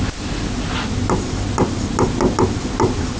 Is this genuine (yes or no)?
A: yes